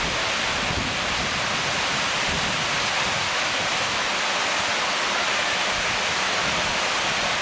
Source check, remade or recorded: recorded